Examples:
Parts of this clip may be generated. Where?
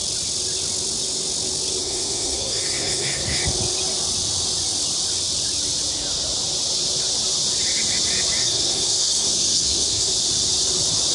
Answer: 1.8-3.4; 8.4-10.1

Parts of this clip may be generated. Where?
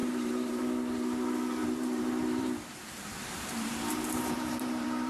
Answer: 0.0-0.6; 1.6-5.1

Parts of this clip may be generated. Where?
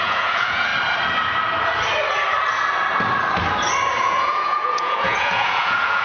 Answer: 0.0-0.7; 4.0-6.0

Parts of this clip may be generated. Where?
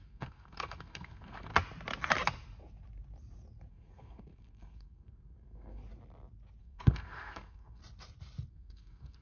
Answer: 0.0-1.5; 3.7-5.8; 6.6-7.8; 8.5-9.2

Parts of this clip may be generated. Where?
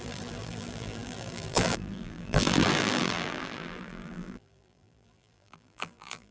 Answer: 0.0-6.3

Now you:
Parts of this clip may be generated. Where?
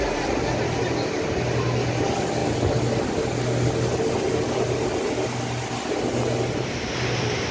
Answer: none